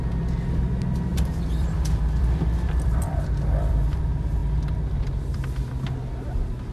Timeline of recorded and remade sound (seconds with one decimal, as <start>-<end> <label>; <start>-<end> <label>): 0.0-1.1 recorded; 1.1-4.0 remade; 4.0-6.7 recorded